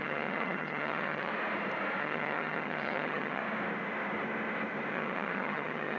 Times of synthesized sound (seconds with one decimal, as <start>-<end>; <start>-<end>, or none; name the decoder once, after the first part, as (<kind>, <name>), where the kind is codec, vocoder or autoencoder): 0.0-1.3 (vocoder, HiFi-GAN); 2.0-3.4; 4.9-6.0